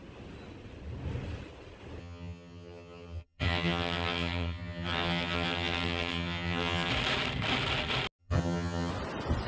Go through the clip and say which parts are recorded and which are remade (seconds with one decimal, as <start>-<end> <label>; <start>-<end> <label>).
0.0-2.0 recorded; 2.0-6.9 remade; 6.9-8.2 recorded; 8.2-8.9 remade; 8.9-9.5 recorded